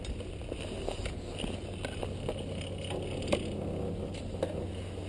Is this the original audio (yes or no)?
yes